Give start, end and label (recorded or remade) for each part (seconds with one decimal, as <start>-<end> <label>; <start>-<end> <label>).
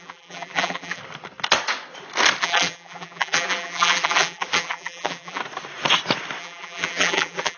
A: 0.0-1.0 remade; 1.0-2.4 recorded; 2.4-5.4 remade; 5.4-6.4 recorded; 6.4-7.6 remade